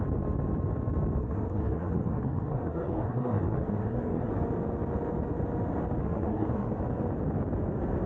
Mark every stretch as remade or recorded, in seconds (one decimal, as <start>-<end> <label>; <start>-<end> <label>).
0.0-1.2 recorded; 1.2-4.3 remade; 4.3-6.0 recorded; 6.0-6.8 remade; 6.8-8.1 recorded